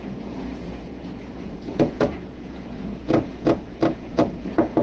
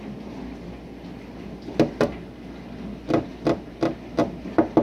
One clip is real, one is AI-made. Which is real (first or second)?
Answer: second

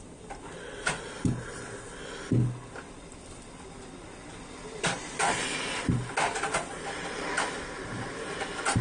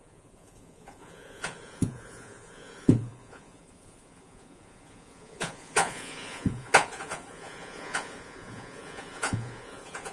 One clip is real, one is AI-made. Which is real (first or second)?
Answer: first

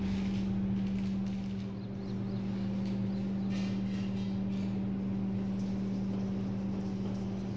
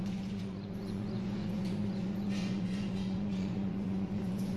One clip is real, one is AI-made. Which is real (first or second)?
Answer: first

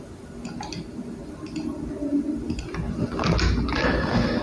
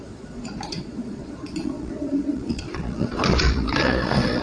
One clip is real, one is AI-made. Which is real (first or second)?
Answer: first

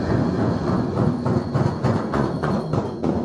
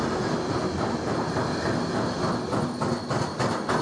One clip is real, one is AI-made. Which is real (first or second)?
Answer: second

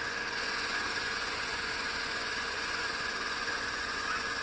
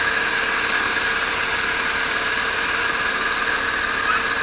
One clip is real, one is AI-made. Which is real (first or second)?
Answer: second